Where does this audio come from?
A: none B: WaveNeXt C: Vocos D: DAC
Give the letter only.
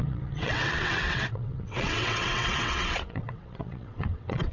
B